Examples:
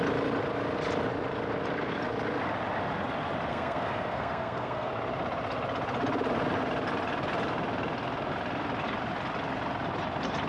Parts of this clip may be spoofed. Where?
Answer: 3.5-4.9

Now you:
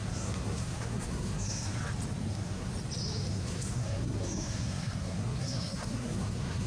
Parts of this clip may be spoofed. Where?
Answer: 0.0-1.8; 2.3-2.7; 3.3-6.7

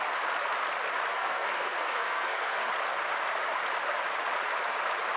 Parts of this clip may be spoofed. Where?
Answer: 1.1-2.7

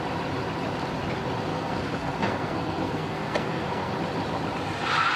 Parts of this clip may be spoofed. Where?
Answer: 1.5-3.9

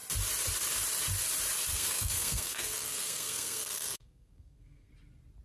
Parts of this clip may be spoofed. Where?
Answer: 1.7-4.9

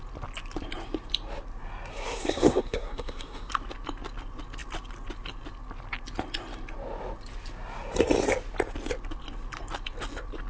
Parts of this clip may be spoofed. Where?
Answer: 1.9-3.5

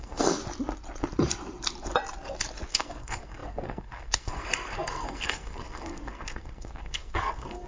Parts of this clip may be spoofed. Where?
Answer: 0.0-0.4; 2.7-7.7

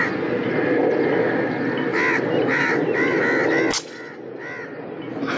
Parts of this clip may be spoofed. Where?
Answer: none